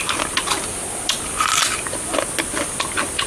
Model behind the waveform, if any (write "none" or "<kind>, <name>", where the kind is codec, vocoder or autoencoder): none